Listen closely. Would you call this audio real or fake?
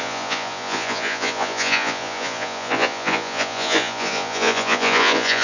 fake